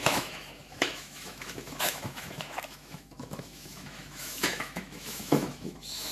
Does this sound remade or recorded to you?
remade